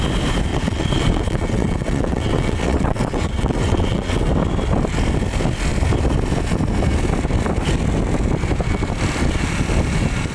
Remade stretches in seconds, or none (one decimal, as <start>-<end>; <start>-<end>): 0.5-4.3